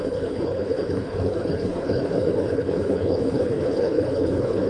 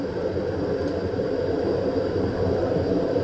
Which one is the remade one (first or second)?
first